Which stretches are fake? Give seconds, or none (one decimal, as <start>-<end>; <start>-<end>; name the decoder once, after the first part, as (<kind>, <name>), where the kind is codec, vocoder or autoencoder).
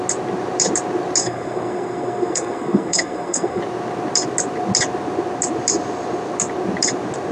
1.2-3.6 (codec, SNAC)